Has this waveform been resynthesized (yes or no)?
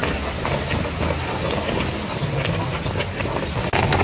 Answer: no